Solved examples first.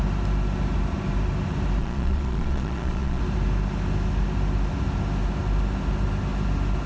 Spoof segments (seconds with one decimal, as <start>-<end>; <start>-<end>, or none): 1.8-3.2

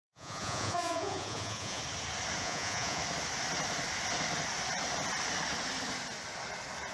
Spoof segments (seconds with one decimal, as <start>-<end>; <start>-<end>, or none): 0.0-1.8; 2.4-3.0

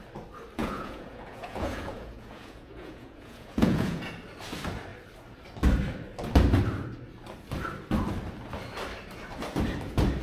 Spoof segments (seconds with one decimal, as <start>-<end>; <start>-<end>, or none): 0.6-4.2

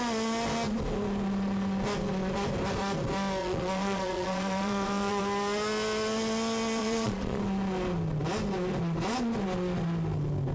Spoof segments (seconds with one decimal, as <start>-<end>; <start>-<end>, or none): 3.4-5.2; 6.8-7.4